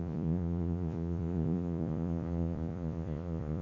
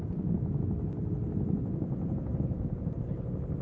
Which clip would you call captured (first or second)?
second